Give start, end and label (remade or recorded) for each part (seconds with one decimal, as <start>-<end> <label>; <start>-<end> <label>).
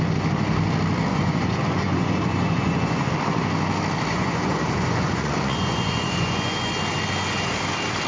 0.0-1.1 recorded; 1.1-3.1 remade; 3.1-4.1 recorded; 4.1-6.7 remade; 6.7-8.1 recorded